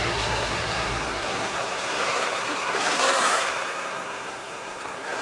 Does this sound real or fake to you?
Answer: fake